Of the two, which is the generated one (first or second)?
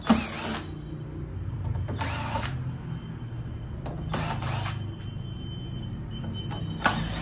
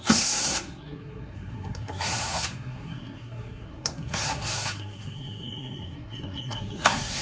second